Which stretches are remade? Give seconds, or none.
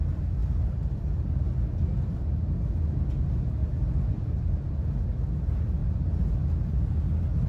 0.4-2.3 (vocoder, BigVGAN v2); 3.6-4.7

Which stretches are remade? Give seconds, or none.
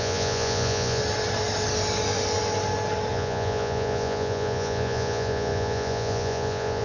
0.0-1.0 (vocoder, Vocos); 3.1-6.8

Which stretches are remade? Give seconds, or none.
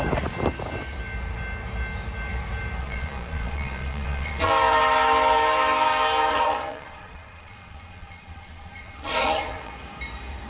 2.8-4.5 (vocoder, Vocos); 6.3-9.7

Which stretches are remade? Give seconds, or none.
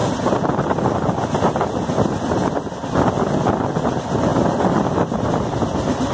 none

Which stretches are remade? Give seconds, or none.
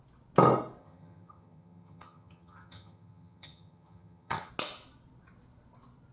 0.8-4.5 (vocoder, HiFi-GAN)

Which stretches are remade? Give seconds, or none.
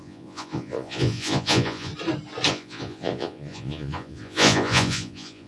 0.0-1.9 (vocoder, Vocos); 2.5-5.5